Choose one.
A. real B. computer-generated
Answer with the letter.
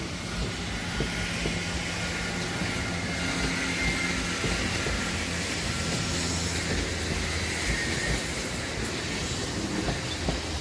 A